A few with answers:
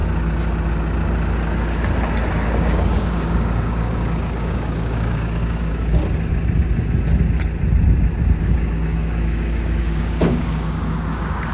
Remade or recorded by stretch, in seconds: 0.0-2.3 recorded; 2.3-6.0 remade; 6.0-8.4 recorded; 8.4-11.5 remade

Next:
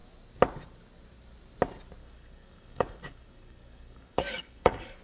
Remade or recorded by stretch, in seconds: 0.0-2.0 recorded; 2.0-5.0 remade

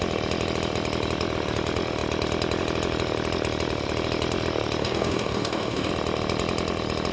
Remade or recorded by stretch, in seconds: 0.0-4.8 recorded; 4.8-5.9 remade; 5.9-7.1 recorded

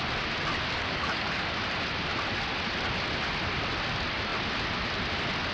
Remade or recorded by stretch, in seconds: 0.0-0.8 recorded; 0.8-1.4 remade; 1.4-5.5 recorded

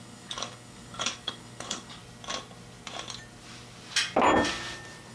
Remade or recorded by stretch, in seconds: 0.0-2.0 remade; 2.0-5.1 recorded

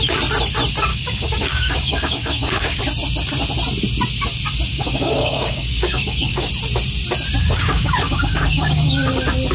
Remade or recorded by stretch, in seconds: 0.0-0.9 recorded; 0.9-2.8 remade; 2.8-4.7 recorded; 4.7-6.5 remade; 6.5-7.4 recorded; 7.4-9.1 remade; 9.1-9.5 recorded

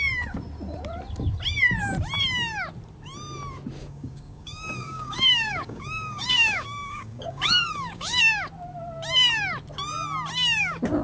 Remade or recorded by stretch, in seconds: 0.0-3.8 recorded; 3.8-8.2 remade; 8.2-11.0 recorded

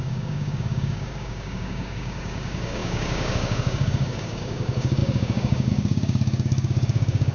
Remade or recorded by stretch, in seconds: 0.0-7.3 remade